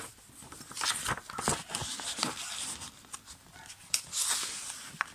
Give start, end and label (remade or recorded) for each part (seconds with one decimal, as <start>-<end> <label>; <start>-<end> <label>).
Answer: 0.0-5.1 recorded